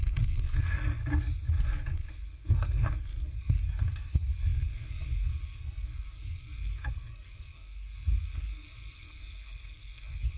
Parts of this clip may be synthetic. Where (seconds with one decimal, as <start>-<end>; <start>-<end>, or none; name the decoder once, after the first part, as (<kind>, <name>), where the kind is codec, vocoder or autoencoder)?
0.0-1.0 (codec, SNAC); 1.9-10.4

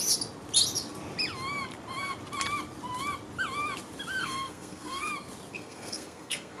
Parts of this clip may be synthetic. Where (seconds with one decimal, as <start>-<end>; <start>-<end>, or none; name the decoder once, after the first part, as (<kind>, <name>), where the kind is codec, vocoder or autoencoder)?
4.2-5.1 (codec, SNAC); 5.5-6.6

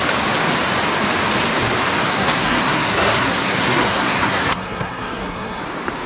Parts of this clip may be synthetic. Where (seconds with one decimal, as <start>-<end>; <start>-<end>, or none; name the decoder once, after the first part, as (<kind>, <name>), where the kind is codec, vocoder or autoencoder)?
2.1-5.6 (codec, SNAC)

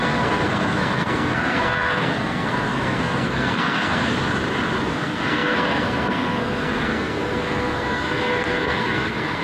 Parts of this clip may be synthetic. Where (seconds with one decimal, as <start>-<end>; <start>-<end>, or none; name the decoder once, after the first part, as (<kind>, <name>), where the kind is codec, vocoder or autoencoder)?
0.0-4.1 (codec, SNAC); 4.8-9.4

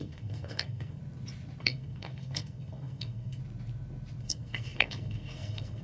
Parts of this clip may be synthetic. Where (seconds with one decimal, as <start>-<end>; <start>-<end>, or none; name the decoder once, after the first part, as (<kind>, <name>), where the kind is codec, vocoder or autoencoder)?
0.0-1.0 (codec, SNAC); 1.6-3.4; 4.2-5.8

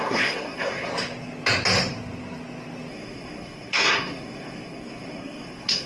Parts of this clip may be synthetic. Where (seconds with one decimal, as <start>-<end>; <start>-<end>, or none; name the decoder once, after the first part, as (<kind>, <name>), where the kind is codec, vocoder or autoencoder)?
0.0-0.9 (codec, SNAC); 2.9-5.9

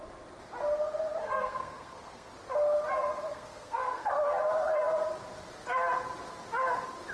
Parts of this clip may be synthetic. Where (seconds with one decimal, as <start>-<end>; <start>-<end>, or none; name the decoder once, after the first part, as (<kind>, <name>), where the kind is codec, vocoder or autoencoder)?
1.2-2.3 (codec, SNAC); 3.3-4.1

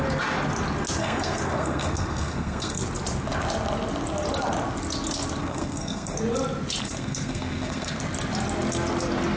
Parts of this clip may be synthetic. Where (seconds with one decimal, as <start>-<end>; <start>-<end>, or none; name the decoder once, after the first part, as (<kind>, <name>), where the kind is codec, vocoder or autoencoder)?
1.0-2.8 (codec, SNAC); 5.4-6.2; 6.8-8.0